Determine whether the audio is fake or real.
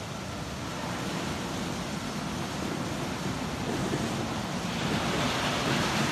real